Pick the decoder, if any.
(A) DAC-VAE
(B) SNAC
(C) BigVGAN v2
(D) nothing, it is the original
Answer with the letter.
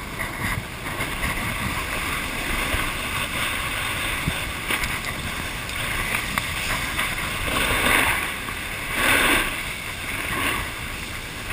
D